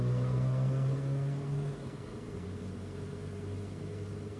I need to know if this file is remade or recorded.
remade